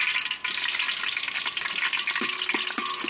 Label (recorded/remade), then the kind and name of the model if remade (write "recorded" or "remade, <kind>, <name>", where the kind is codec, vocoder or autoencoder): recorded